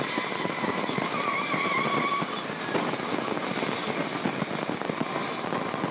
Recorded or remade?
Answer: recorded